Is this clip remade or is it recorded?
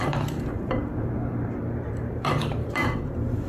remade